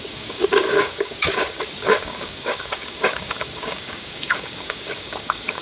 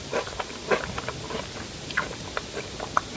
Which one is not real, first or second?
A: first